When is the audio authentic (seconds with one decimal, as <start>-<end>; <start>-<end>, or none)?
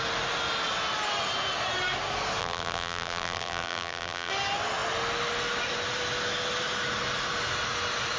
0.0-2.4; 4.3-8.2